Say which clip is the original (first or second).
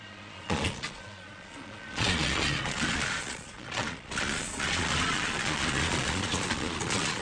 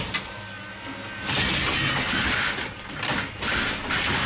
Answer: second